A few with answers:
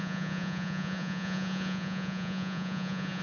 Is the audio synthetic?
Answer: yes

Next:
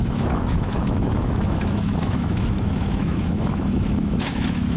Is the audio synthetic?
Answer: yes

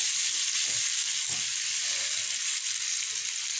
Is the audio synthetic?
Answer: no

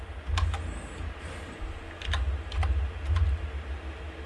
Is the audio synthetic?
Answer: no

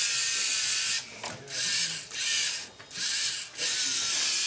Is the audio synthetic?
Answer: no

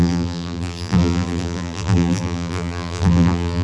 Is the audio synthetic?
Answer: yes